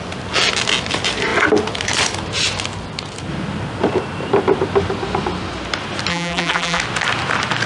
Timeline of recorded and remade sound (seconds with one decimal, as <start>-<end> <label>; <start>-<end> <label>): 0.0-6.1 recorded; 6.1-6.8 remade; 6.8-7.7 recorded